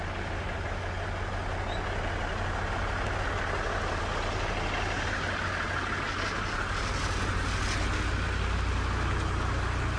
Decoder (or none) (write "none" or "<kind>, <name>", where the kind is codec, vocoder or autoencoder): none